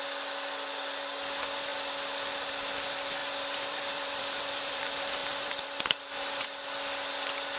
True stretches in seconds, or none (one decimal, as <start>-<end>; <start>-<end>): 0.0-3.2; 4.8-5.2; 6.0-7.6